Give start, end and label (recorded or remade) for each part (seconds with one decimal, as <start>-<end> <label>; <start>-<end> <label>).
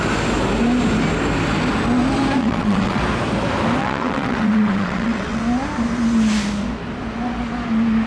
0.0-2.4 recorded; 2.4-3.0 remade; 3.0-3.8 recorded; 3.8-5.4 remade; 5.4-8.1 recorded